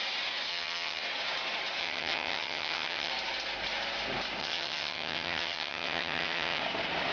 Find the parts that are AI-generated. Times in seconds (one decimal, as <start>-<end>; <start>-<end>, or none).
0.5-1.0; 1.8-3.1; 4.4-6.6

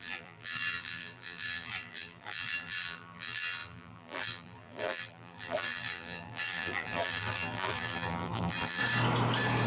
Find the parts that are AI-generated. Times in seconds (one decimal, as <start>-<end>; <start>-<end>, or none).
0.0-8.8

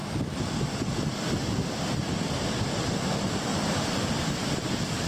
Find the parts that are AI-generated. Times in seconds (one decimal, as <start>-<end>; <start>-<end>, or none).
3.1-3.5; 4.2-5.1

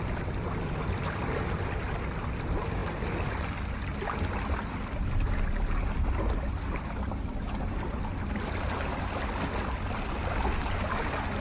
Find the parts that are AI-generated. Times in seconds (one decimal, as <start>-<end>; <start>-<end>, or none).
none